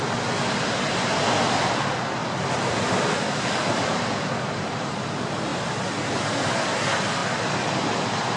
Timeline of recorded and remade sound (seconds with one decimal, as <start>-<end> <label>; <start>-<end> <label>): 0.0-2.2 recorded; 2.2-5.1 remade; 5.1-7.2 recorded; 7.2-8.0 remade; 8.0-8.4 recorded